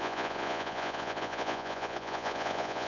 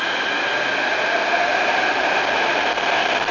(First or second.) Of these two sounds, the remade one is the first